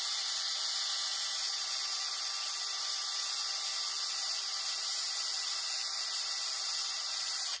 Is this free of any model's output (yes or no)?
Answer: yes